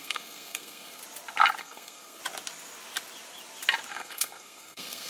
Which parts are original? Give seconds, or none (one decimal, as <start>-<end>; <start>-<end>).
1.0-1.6; 2.2-3.9